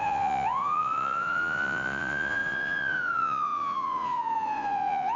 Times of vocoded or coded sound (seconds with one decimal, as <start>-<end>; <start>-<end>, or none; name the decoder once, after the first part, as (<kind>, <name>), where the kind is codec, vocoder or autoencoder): 0.0-5.2 (vocoder, Vocos)